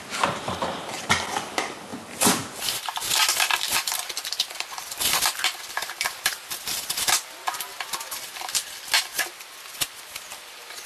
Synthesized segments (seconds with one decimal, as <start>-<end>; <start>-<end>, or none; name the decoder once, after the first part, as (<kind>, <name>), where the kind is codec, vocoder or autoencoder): 0.0-7.7 (vocoder, BigVGAN v2); 9.0-10.9